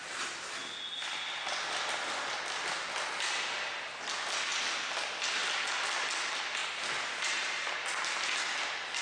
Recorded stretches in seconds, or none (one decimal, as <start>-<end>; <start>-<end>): 0.0-9.0